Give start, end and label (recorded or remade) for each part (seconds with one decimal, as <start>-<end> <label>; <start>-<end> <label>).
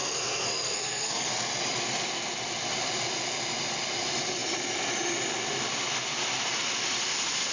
0.0-1.3 remade; 1.3-7.5 recorded